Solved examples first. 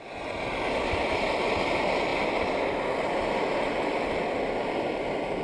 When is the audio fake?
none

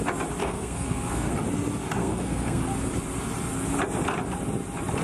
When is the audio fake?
0.4-1.3; 2.0-2.6

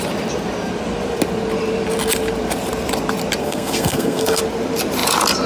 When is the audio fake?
3.4-4.4

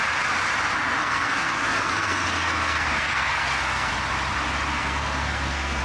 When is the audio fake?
1.0-3.9; 4.7-5.8

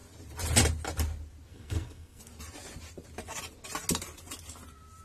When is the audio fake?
1.5-2.2

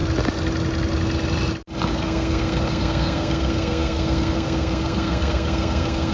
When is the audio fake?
1.9-6.1

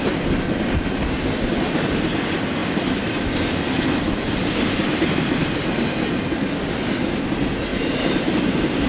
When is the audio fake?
none

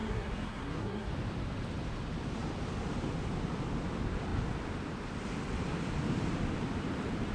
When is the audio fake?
0.0-1.1